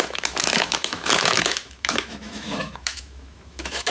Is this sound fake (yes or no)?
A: yes